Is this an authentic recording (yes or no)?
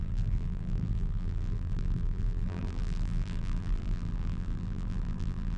no